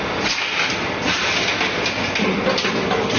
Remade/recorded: recorded